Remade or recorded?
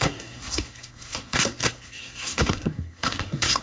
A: remade